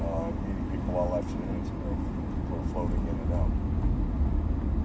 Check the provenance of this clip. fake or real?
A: real